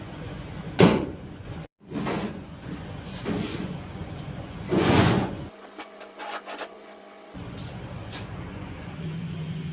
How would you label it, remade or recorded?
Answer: remade